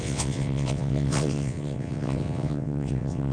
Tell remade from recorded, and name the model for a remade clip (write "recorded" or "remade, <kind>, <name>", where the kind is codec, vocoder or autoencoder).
remade, vocoder, WaveNeXt